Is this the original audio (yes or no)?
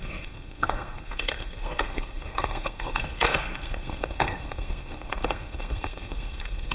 no